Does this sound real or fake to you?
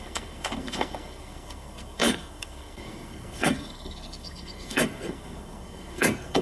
fake